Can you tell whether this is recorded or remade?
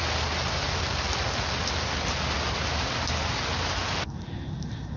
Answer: recorded